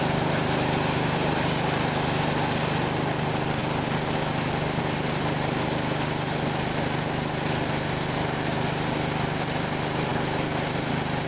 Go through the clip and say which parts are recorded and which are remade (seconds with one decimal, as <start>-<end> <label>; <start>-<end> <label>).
0.0-11.3 recorded